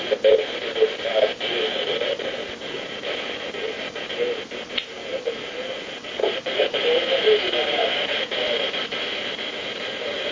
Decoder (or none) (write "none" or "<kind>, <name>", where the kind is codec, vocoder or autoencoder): vocoder, BigVGAN v2